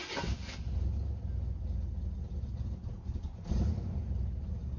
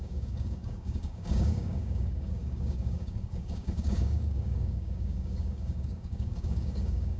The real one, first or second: first